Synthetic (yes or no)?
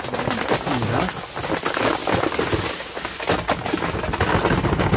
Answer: no